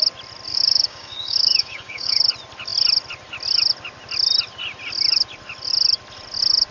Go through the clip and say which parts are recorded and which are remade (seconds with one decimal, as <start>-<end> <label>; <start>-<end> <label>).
0.0-0.5 recorded; 0.5-2.2 remade; 2.2-6.7 recorded